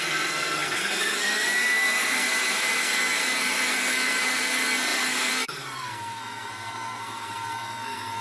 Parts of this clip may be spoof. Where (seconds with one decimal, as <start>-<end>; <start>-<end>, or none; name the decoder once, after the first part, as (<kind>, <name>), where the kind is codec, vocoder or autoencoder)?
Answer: 0.0-8.2 (codec, SNAC)